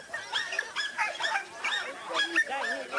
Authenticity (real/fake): real